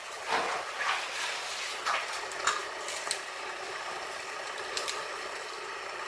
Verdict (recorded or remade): recorded